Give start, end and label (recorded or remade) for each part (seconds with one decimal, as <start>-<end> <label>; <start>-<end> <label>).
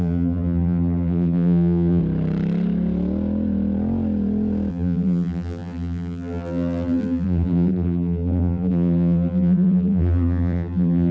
0.0-2.0 remade; 2.0-4.7 recorded; 4.7-11.1 remade